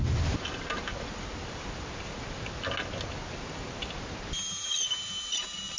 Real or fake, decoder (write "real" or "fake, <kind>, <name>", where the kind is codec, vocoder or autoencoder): real